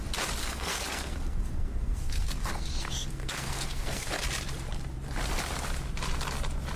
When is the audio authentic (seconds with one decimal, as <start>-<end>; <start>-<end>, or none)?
0.0-0.4; 4.1-6.8